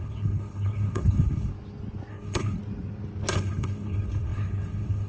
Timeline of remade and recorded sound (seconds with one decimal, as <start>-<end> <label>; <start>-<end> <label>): 0.0-1.5 remade; 1.5-2.1 recorded; 2.1-2.6 remade; 2.6-3.3 recorded; 3.3-5.1 remade

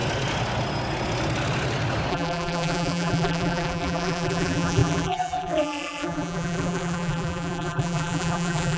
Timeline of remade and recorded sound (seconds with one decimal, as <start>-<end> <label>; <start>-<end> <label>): 0.0-2.1 recorded; 2.1-8.8 remade

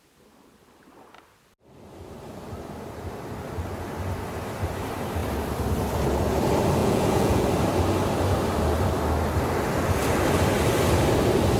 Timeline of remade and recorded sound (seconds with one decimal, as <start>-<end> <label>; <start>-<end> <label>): 0.0-6.8 recorded; 6.8-7.4 remade; 7.4-11.6 recorded